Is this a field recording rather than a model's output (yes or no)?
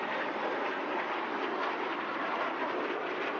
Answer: yes